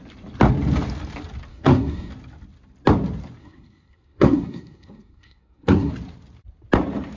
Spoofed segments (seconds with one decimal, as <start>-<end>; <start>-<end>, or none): 1.5-2.1; 3.4-5.9